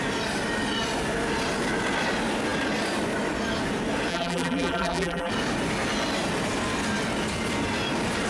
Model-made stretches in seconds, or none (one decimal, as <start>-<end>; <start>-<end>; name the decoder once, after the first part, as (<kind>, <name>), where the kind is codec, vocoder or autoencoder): 4.1-5.3 (vocoder, BigVGAN v2)